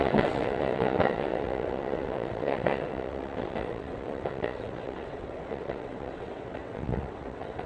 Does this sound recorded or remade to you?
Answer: remade